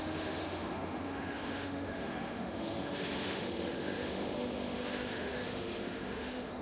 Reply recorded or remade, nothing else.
remade